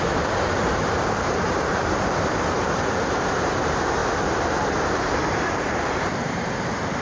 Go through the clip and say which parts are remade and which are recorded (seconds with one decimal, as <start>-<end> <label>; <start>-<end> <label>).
0.0-4.0 remade; 4.0-4.8 recorded; 4.8-7.0 remade